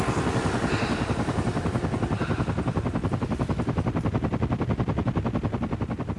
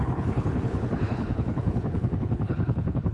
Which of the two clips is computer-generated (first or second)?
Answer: second